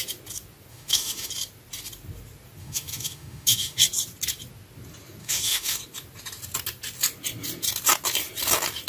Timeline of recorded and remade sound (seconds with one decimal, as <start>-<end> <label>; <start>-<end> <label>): 0.0-0.7 recorded; 0.7-1.3 remade; 1.3-2.6 recorded; 2.6-3.8 remade; 3.8-5.2 recorded; 5.2-5.8 remade; 5.8-8.9 recorded